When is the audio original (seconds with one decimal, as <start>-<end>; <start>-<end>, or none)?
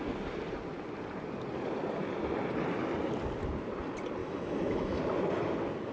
0.0-4.2; 5.0-5.9